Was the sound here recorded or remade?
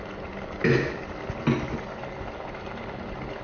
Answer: recorded